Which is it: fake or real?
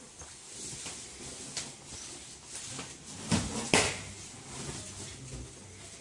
real